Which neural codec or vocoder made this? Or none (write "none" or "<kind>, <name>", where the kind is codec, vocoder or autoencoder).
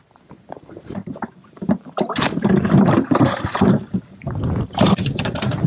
vocoder, BigVGAN v2